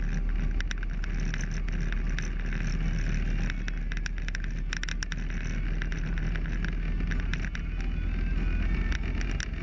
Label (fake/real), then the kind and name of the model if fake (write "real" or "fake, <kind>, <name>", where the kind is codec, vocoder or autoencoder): real